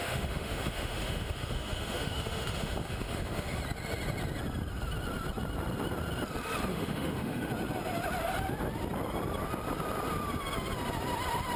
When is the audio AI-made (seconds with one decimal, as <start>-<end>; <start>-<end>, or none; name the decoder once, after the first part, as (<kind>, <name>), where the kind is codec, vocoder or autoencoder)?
0.0-3.6 (autoencoder, DAC-VAE); 6.7-7.5